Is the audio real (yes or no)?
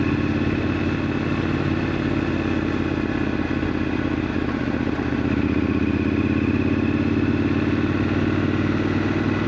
yes